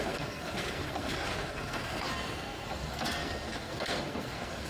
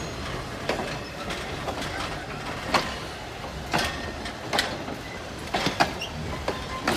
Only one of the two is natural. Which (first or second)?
second